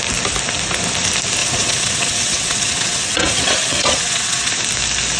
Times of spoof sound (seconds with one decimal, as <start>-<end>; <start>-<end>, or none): 1.4-4.5